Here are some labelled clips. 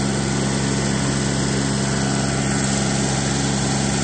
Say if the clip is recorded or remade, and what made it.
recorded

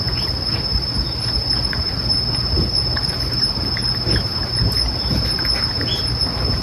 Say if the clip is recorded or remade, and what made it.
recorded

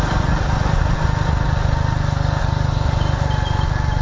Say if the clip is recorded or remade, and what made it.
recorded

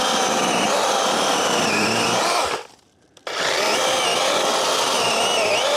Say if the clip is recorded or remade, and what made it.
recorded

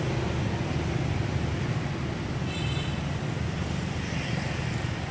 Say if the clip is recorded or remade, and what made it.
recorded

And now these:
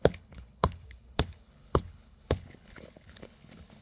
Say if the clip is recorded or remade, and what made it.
remade, codec, HILCodec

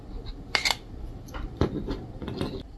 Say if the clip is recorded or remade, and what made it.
recorded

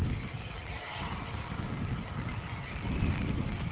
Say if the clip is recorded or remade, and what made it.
recorded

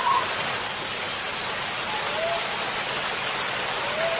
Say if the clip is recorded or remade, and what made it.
recorded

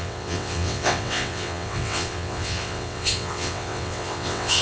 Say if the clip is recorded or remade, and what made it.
remade, vocoder, WaveNeXt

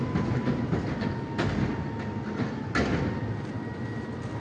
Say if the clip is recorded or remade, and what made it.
recorded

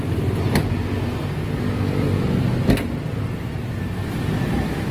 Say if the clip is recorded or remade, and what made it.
recorded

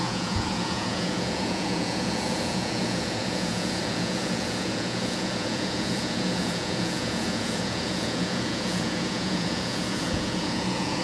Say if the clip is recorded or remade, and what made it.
remade, vocoder, Vocos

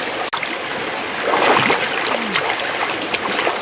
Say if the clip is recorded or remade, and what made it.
recorded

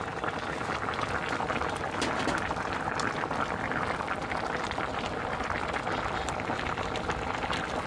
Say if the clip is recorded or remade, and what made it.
recorded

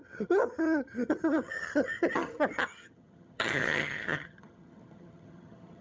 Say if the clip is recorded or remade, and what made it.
remade, vocoder, HiFi-GAN